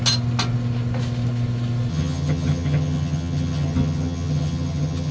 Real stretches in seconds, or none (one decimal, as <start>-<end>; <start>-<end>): 0.0-1.9